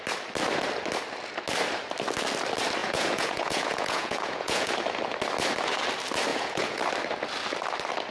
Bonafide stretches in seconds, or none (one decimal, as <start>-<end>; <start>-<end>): 0.0-2.8; 4.7-6.3; 6.8-8.1